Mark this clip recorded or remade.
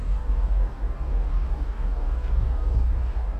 remade